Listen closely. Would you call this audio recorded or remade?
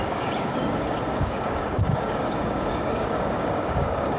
remade